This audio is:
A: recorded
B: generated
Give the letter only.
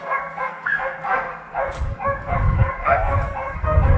B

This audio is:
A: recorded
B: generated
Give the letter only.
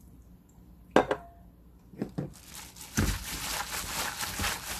A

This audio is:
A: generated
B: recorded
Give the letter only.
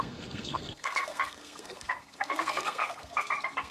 A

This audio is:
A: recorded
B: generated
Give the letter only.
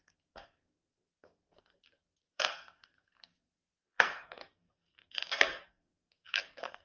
B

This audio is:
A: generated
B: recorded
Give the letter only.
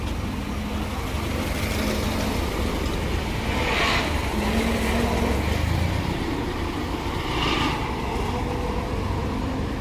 B